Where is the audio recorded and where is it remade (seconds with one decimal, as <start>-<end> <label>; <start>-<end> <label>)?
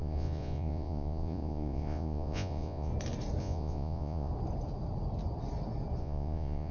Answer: 0.0-2.9 remade; 2.9-3.4 recorded; 3.4-4.3 remade; 4.3-6.0 recorded; 6.0-6.7 remade